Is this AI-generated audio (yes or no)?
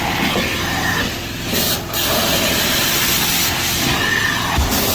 no